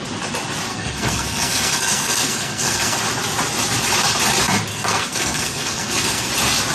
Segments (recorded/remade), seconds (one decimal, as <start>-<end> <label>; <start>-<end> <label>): 0.0-0.7 recorded; 0.7-3.0 remade; 3.0-4.7 recorded; 4.7-6.3 remade; 6.3-6.7 recorded